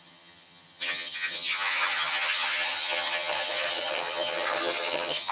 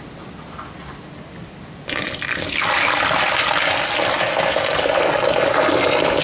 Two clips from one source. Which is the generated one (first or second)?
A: first